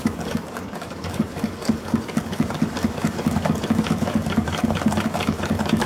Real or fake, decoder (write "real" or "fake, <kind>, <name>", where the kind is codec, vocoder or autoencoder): fake, codec, DAC